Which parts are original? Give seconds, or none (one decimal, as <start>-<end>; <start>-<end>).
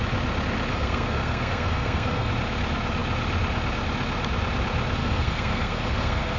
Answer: 0.0-0.7; 2.3-5.0